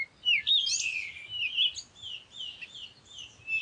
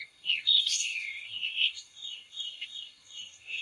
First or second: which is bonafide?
first